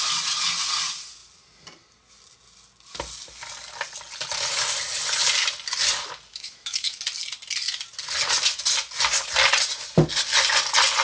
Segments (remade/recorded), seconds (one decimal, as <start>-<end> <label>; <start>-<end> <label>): 0.0-6.3 recorded; 6.3-7.0 remade; 7.0-11.0 recorded